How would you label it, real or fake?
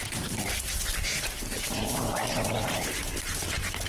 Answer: real